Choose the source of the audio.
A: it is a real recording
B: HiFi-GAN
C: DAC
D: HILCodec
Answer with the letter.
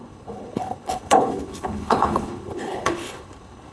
D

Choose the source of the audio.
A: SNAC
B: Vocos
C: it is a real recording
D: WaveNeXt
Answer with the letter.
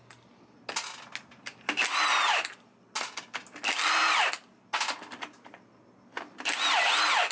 C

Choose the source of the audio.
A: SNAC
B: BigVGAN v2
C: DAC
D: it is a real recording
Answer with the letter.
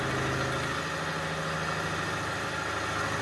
D